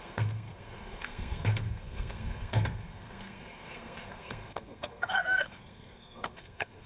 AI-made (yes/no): yes